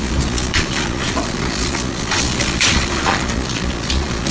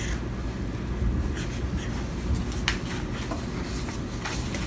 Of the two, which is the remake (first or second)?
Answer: first